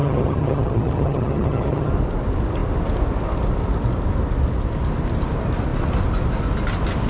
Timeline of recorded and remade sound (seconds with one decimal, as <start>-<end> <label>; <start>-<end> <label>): 0.0-1.9 remade; 1.9-7.1 recorded